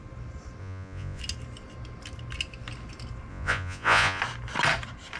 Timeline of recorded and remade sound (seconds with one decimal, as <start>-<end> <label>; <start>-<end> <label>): 0.0-0.6 recorded; 0.6-1.2 remade; 1.2-3.3 recorded; 3.3-4.2 remade; 4.2-5.2 recorded